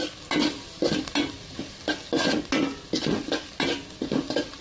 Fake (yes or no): no